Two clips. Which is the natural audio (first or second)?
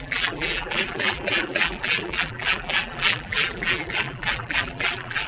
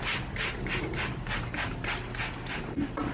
second